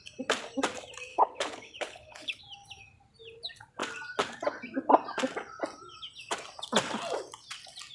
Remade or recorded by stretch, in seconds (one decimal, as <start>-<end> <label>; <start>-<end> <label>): 0.0-1.1 recorded; 1.1-2.4 remade; 2.4-7.9 recorded